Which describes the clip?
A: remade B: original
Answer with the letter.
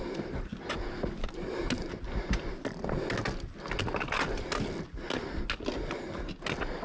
B